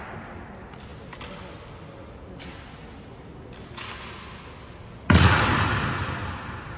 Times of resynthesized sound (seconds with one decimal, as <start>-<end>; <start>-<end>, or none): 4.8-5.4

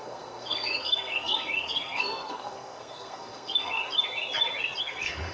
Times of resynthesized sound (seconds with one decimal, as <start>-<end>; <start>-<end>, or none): 0.0-3.8; 4.8-5.3

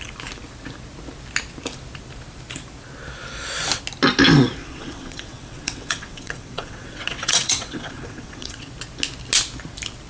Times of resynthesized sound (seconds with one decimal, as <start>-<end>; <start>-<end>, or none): 4.6-8.7